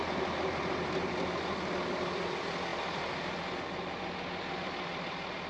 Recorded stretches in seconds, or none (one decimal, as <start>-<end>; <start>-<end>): 0.0-5.5